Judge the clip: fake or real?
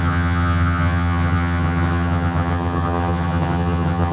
fake